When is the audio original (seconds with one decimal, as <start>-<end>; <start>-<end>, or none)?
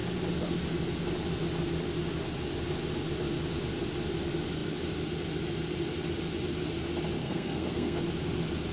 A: 0.0-7.2; 8.0-8.7